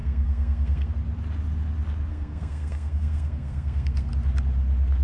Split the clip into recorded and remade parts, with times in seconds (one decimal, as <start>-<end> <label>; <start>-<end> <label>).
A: 0.0-0.9 remade; 0.9-2.1 recorded; 2.1-4.1 remade; 4.1-5.0 recorded